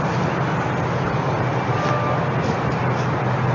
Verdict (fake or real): real